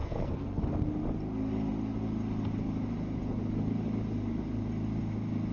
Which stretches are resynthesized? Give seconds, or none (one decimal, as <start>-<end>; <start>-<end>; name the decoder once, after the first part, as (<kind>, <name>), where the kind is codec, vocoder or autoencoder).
0.0-0.6 (codec, SNAC)